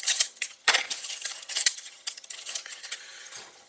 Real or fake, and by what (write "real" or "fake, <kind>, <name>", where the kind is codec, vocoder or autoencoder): fake, vocoder, HiFi-GAN